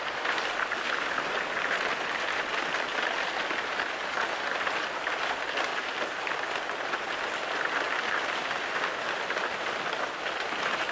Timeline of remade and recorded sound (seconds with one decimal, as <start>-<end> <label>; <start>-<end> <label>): 0.0-10.9 recorded